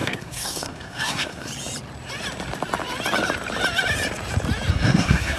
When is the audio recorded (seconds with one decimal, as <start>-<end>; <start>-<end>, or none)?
1.5-4.7